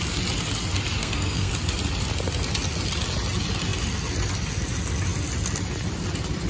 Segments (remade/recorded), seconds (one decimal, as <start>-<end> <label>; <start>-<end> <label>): 0.0-1.0 recorded; 1.0-1.5 remade; 1.5-6.5 recorded